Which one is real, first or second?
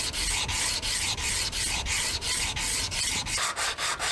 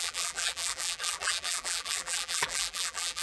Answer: first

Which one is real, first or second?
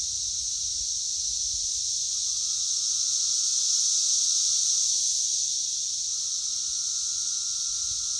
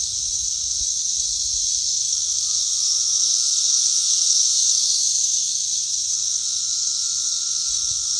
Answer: first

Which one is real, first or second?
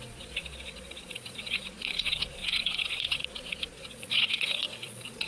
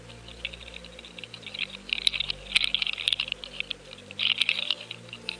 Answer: second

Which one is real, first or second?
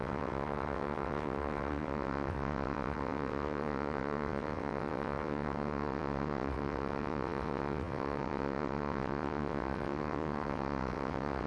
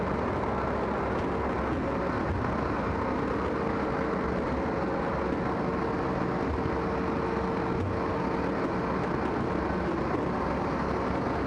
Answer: second